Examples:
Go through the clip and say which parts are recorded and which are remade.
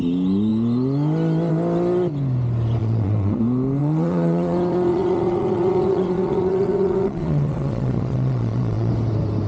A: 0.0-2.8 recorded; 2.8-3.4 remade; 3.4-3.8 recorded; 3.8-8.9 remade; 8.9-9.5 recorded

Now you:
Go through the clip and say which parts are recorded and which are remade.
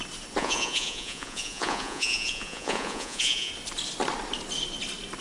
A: 0.0-0.4 recorded; 0.4-3.5 remade; 3.5-5.2 recorded